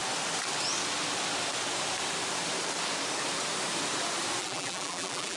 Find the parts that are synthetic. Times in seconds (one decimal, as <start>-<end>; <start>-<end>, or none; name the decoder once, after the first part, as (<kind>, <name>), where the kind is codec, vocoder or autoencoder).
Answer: 4.4-5.4 (vocoder, BigVGAN v2)

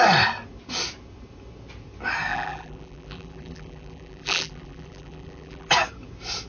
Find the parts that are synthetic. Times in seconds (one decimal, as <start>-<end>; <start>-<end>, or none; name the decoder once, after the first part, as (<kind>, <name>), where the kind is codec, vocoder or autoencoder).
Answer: 2.3-5.7 (vocoder, BigVGAN v2)

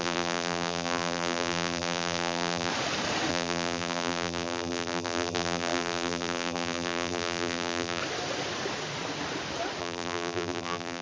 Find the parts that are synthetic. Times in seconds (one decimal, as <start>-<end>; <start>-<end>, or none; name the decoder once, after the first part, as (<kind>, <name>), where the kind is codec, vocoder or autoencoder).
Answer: 0.0-2.7 (vocoder, BigVGAN v2); 3.3-8.0; 9.8-11.0